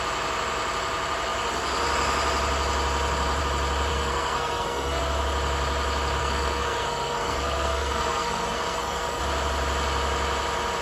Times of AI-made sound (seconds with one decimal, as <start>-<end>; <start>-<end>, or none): 3.9-5.0; 6.2-9.2